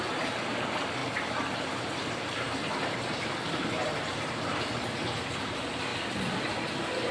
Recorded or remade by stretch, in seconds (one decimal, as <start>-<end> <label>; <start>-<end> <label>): 0.0-5.9 remade; 5.9-6.4 recorded; 6.4-7.1 remade